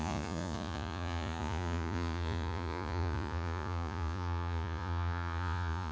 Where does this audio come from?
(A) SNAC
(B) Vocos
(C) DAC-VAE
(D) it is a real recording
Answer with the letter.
B